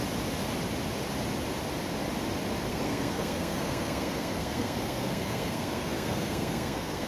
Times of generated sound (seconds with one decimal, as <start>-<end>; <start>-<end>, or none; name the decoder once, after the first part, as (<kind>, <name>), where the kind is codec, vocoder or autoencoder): 2.7-7.1 (codec, SNAC)